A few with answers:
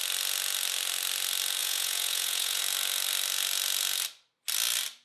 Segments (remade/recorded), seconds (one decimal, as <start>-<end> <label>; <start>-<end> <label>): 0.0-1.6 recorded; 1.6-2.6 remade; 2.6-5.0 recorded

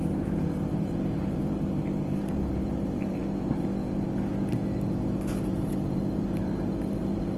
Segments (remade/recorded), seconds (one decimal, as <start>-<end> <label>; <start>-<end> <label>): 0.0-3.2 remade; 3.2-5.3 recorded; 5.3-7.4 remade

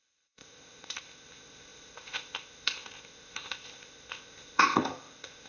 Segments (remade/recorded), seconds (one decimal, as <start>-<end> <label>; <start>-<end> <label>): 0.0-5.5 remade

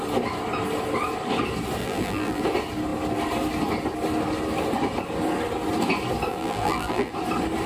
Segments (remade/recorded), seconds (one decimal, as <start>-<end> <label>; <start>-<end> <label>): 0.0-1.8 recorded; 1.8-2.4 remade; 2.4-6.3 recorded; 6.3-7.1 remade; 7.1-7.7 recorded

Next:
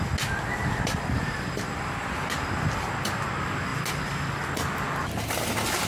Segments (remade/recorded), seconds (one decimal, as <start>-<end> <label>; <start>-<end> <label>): 0.0-0.6 recorded; 0.6-2.5 remade; 2.5-5.9 recorded